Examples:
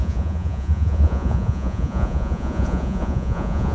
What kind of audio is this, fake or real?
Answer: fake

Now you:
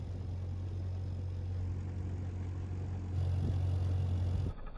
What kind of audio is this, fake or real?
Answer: real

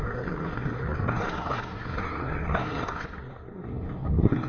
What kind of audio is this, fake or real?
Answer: fake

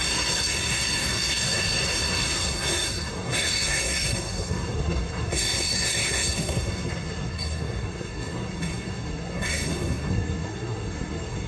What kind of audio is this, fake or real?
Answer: fake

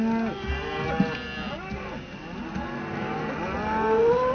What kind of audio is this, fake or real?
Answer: real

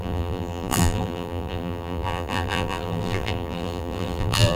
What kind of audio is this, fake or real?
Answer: fake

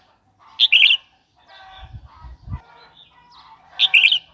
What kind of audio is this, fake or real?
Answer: real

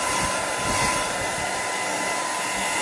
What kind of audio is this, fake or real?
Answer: real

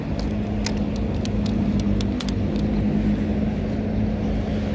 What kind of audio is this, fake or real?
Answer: real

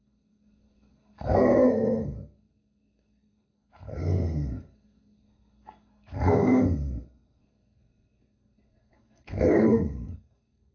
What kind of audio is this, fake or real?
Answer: fake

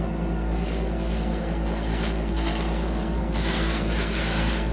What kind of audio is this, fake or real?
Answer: fake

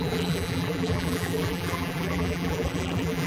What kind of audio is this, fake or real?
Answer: fake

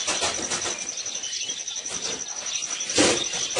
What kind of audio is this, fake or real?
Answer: real